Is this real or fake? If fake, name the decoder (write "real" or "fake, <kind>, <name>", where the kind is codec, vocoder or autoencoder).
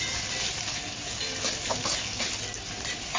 real